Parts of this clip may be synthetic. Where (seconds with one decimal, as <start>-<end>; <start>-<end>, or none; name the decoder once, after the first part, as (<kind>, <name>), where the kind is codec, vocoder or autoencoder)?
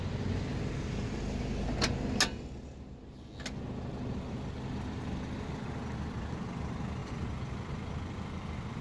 none